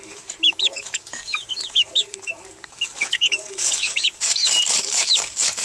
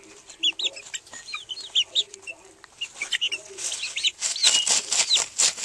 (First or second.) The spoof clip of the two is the first